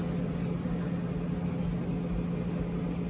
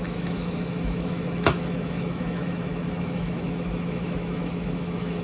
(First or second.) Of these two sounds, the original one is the first